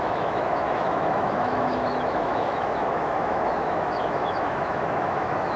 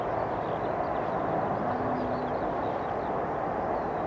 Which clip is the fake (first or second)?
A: first